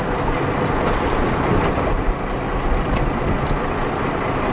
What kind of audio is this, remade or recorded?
recorded